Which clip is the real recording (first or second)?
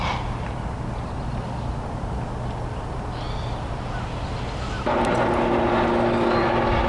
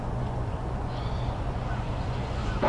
first